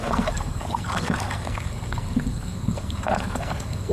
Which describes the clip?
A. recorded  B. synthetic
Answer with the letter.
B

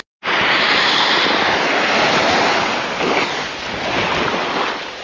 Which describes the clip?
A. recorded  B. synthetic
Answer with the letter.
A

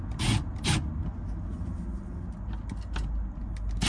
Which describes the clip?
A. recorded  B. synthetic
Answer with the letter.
A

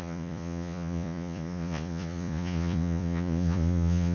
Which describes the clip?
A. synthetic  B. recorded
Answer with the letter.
A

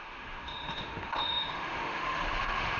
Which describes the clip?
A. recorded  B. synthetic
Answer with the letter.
B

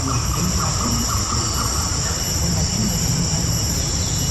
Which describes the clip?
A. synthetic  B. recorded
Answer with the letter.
A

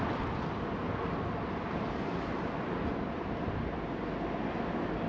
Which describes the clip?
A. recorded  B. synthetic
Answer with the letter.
A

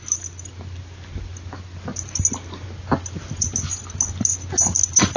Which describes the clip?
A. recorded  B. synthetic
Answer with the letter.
A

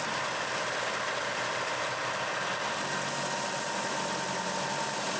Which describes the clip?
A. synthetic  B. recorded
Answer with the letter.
B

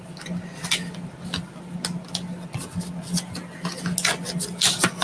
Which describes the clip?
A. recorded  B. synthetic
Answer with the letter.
A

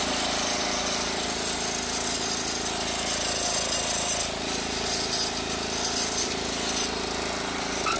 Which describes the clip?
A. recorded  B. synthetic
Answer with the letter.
A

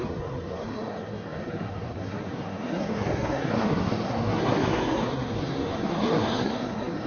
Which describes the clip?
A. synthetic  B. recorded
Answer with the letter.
A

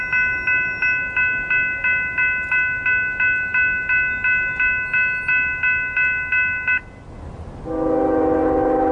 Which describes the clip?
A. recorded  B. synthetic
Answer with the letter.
A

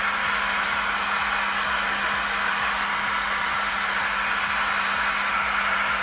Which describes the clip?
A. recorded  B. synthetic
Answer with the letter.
A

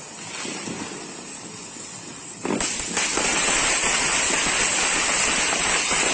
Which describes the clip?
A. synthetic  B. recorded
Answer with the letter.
B